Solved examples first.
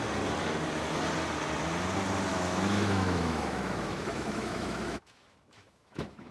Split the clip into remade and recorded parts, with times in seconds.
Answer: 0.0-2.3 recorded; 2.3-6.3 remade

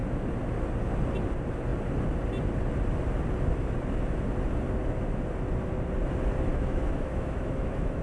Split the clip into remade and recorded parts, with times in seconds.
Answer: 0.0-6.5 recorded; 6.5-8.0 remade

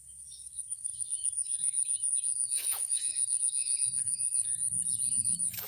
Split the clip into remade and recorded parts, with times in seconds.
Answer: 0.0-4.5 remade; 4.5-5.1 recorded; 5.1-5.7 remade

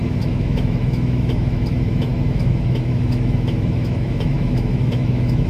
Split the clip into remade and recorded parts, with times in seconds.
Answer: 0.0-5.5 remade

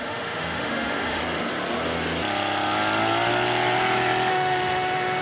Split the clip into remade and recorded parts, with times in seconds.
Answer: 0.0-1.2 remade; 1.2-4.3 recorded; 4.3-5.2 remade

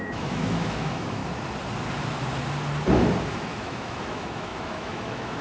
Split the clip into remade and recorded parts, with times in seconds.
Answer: 0.0-1.2 remade; 1.2-3.2 recorded; 3.2-5.4 remade

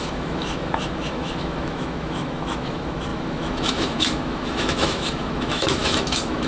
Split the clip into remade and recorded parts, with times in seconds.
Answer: 0.0-6.5 remade

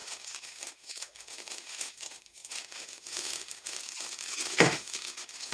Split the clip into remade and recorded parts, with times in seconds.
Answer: 0.0-5.5 remade